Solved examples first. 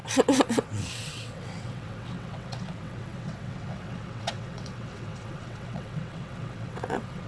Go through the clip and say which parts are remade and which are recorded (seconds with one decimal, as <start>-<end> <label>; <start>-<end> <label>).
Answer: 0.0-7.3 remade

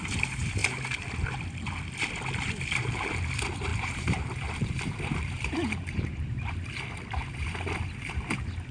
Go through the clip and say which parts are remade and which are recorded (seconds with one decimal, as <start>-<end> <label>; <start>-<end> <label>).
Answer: 0.0-0.6 recorded; 0.6-1.4 remade; 1.4-3.7 recorded; 3.7-6.5 remade; 6.5-8.7 recorded

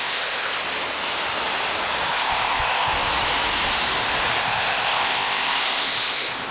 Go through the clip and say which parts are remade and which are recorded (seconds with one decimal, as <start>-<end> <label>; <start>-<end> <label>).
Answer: 0.0-0.6 remade; 0.6-2.1 recorded; 2.1-2.9 remade; 2.9-4.4 recorded; 4.4-6.5 remade

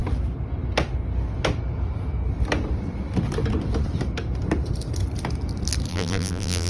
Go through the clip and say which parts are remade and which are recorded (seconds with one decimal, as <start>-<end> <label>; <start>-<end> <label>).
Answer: 0.0-5.9 recorded; 5.9-6.7 remade